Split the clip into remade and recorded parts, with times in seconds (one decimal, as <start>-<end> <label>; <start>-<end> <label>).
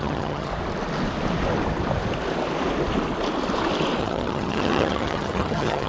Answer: 0.0-0.5 remade; 0.5-4.0 recorded; 4.0-5.9 remade